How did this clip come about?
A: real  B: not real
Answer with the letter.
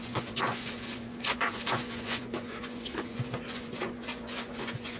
B